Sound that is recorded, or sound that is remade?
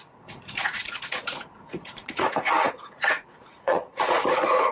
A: remade